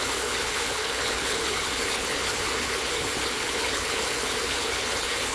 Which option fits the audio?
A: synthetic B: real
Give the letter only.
A